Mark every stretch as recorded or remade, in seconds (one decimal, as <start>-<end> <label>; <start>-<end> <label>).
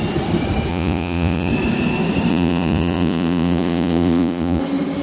0.0-0.7 recorded; 0.7-1.5 remade; 1.5-2.3 recorded; 2.3-4.6 remade; 4.6-5.0 recorded